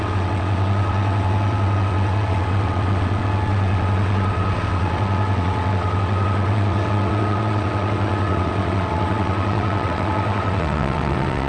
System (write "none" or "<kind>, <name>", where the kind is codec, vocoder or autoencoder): vocoder, WaveNeXt